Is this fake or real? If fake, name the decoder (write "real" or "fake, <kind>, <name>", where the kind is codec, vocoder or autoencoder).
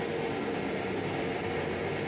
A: real